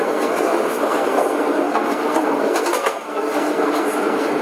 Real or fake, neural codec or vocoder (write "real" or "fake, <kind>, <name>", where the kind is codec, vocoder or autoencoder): fake, codec, SNAC